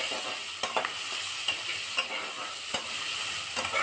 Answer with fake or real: real